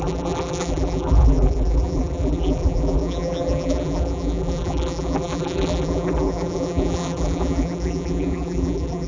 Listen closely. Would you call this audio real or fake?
fake